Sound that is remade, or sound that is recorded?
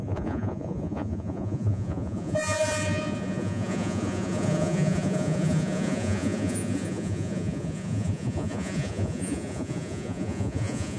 remade